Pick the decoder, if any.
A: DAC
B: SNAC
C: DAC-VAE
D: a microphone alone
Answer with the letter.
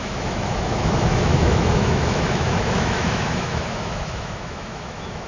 C